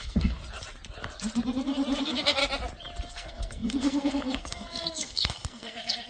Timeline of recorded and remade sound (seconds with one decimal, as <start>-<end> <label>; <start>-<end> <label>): 0.0-0.4 remade; 0.4-2.0 recorded; 2.0-2.4 remade; 2.4-3.1 recorded; 3.1-6.1 remade